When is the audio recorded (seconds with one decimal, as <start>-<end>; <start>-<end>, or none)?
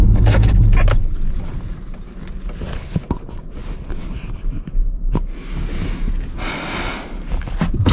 0.0-7.9